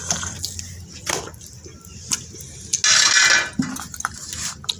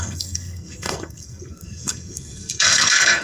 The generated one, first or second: second